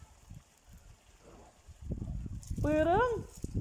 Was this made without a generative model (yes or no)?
yes